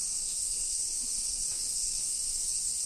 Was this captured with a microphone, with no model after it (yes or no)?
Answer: no